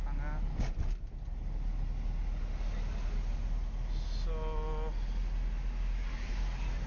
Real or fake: real